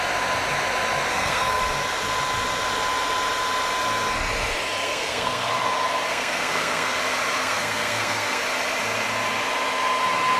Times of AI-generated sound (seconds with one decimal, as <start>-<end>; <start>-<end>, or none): 1.1-1.6; 4.8-5.5; 6.1-7.0; 7.4-8.4